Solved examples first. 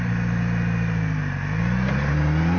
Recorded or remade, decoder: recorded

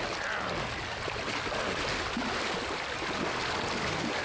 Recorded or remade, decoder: recorded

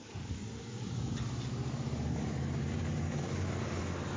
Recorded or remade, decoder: remade, codec, DAC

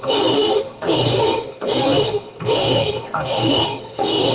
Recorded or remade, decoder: remade, codec, DAC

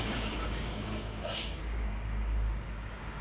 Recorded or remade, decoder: remade, codec, DAC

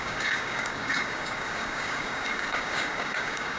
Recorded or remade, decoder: remade, codec, DAC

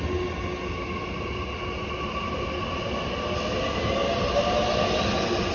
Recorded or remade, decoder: recorded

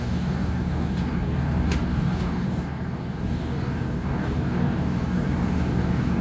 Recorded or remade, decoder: remade, codec, DAC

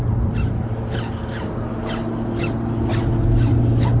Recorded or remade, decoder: recorded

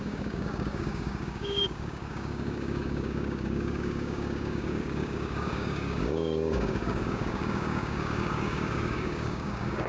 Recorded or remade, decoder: remade, codec, DAC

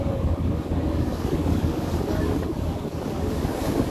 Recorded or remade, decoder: remade, codec, DAC